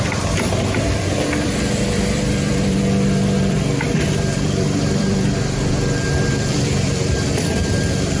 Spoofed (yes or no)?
yes